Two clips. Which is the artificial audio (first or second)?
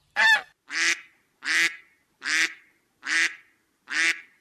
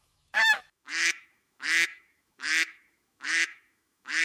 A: second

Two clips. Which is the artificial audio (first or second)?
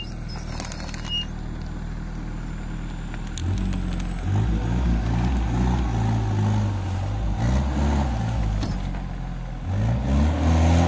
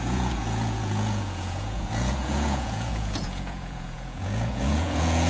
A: second